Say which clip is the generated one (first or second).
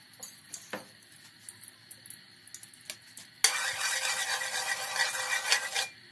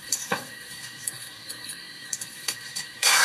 second